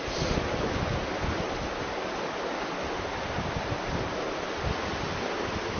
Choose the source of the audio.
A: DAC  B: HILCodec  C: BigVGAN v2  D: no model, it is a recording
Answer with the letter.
D